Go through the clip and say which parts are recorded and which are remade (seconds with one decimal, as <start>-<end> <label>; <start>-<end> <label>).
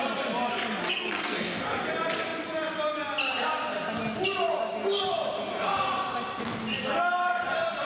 0.0-0.9 recorded; 0.9-1.9 remade; 1.9-7.8 recorded